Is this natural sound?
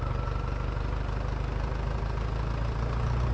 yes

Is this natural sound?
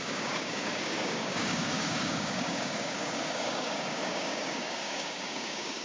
no